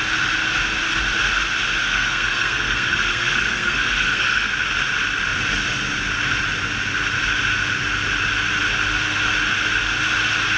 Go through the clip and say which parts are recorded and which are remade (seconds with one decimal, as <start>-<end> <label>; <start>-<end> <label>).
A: 0.0-1.8 recorded; 1.8-4.5 remade; 4.5-10.6 recorded